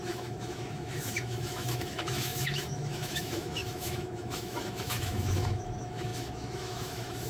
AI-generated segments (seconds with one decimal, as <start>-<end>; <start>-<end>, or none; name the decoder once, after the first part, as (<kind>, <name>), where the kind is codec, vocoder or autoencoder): 0.0-7.3 (autoencoder, DAC-VAE)

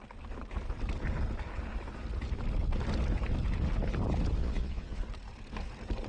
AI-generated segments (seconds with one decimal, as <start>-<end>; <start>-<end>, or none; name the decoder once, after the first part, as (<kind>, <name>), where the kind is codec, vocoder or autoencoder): 4.4-5.0 (vocoder, Vocos)

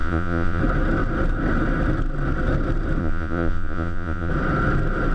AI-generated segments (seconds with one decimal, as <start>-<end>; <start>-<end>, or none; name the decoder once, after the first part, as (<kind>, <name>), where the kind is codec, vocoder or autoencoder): 0.0-0.6 (vocoder, Vocos); 3.0-4.3

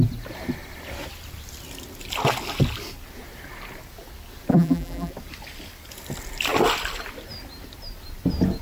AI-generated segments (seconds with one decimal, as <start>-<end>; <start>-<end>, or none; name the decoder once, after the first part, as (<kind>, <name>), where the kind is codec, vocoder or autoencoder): 4.5-5.1 (vocoder, BigVGAN v2)

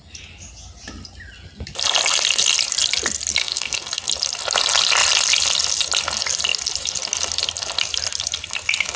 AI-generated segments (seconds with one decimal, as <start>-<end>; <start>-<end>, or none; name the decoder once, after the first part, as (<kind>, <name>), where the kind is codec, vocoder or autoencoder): 3.4-4.0 (codec, SNAC)

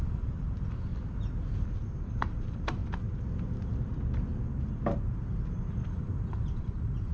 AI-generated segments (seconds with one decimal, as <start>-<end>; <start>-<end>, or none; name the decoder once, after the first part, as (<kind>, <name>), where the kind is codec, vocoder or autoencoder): 0.0-0.9 (vocoder, BigVGAN v2); 2.1-2.8; 5.9-7.1